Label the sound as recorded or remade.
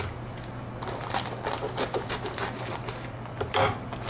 recorded